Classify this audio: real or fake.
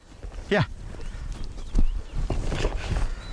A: fake